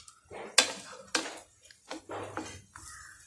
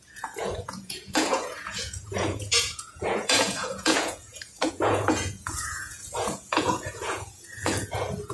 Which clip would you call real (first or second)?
first